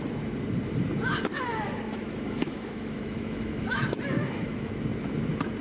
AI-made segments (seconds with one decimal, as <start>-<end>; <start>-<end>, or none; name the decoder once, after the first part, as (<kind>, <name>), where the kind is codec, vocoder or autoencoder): 1.3-4.7 (autoencoder, DAC-VAE)

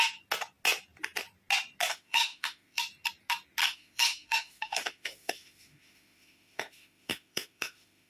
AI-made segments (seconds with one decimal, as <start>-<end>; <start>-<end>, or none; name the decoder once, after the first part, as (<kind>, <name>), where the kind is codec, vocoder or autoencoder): 1.9-2.8 (autoencoder, DAC-VAE); 3.6-8.1

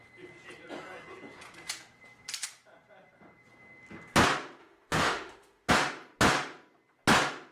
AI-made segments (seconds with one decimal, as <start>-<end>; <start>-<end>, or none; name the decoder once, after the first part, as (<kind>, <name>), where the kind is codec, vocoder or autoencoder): 4.6-5.7 (autoencoder, DAC-VAE)

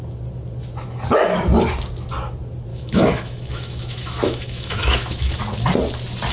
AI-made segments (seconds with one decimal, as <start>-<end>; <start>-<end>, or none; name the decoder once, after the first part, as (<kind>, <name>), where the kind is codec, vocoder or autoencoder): 2.7-5.4 (autoencoder, DAC-VAE)

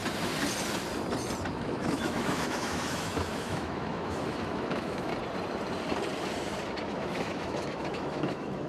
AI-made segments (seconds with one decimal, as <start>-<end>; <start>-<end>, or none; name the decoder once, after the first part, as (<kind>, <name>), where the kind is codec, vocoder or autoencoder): 1.5-5.1 (autoencoder, DAC-VAE); 6.8-8.7

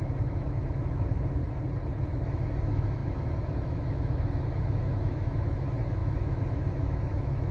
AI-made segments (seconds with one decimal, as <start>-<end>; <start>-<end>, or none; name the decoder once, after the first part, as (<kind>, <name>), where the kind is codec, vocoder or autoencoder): 0.0-1.4 (autoencoder, DAC-VAE); 2.0-7.5

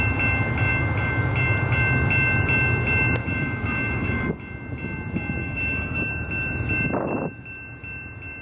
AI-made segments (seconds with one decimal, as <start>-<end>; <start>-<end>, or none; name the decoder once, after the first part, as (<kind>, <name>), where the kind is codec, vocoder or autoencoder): 3.2-4.3 (autoencoder, DAC-VAE); 5.4-6.1